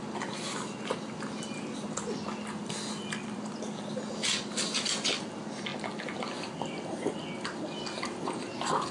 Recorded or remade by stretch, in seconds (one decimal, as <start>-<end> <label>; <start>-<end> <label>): 0.0-8.9 recorded